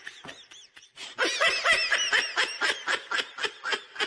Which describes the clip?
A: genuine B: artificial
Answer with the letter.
A